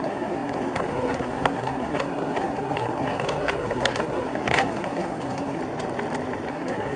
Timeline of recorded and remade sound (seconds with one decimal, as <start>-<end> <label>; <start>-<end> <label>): 0.0-5.6 remade; 5.6-6.5 recorded; 6.5-7.0 remade